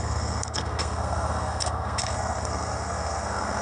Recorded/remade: remade